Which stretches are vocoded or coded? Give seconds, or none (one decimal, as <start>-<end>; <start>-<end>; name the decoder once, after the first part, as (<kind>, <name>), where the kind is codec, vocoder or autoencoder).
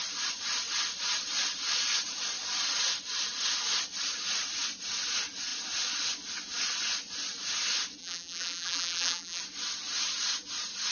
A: 8.0-9.4 (vocoder, BigVGAN v2)